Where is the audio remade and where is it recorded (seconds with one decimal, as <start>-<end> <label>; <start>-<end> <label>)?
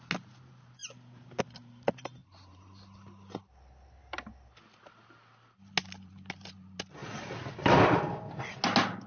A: 0.0-9.1 recorded